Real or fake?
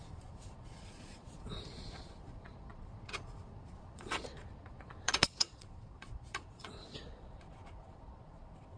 fake